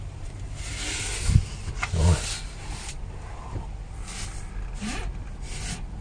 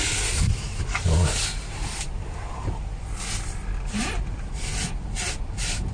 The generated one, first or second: second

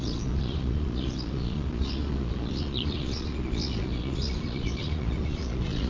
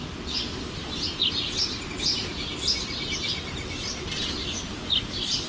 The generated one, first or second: first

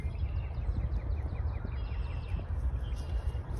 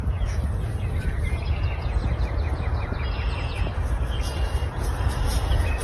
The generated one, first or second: second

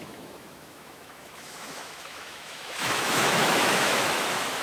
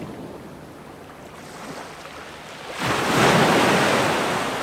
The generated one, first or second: first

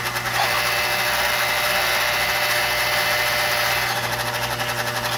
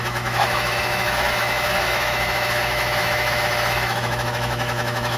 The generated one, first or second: second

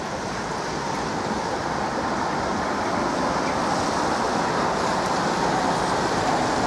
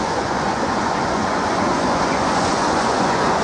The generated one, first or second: second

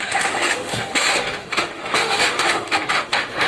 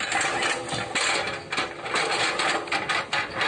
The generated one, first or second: first